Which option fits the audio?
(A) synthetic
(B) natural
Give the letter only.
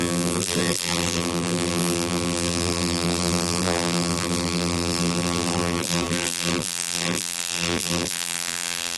A